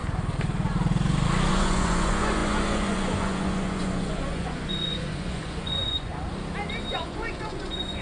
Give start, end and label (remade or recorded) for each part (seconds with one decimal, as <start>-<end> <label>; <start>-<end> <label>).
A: 0.0-1.5 recorded; 1.5-6.1 remade; 6.1-6.9 recorded; 6.9-8.0 remade

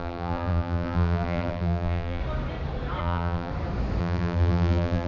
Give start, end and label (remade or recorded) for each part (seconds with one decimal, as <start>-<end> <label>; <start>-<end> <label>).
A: 0.0-2.2 remade; 2.2-3.0 recorded; 3.0-3.5 remade; 3.5-4.0 recorded; 4.0-5.1 remade

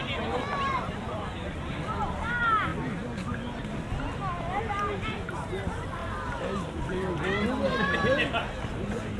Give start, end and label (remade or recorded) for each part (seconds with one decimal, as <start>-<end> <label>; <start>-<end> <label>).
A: 0.0-1.1 recorded; 1.1-2.1 remade; 2.1-9.2 recorded